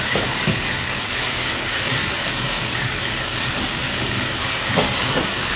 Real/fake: fake